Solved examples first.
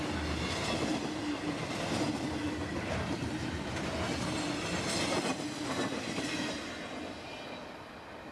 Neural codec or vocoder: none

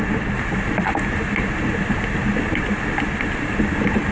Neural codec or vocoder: none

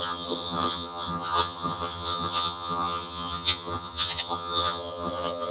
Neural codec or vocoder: vocoder, HiFi-GAN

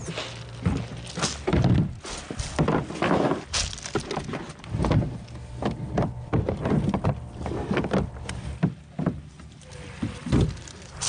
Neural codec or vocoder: none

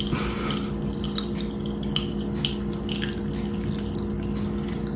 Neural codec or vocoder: none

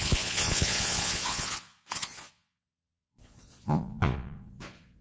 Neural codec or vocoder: vocoder, Vocos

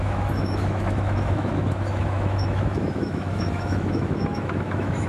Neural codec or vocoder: autoencoder, DAC-VAE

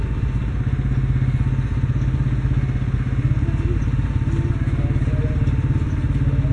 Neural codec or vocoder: none